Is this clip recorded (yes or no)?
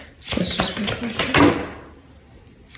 yes